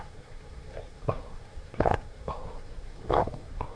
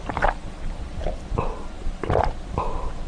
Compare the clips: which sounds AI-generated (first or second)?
first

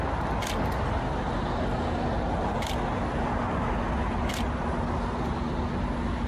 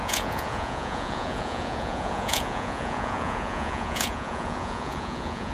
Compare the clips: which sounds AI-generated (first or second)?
second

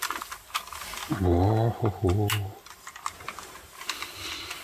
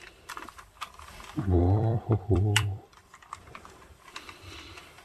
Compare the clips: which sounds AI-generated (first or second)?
second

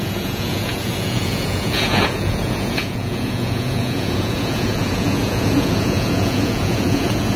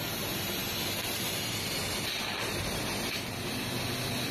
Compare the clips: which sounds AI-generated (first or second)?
first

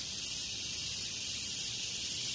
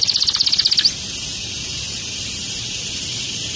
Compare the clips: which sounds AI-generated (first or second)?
first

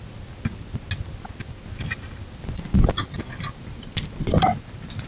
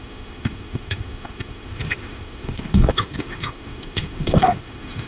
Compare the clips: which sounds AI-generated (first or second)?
second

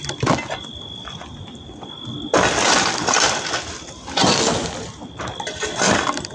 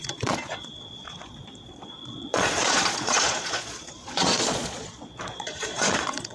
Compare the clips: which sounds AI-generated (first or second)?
second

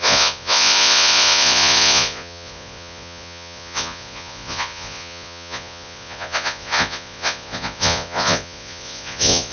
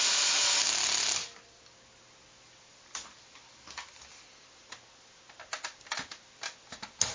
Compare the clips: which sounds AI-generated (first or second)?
first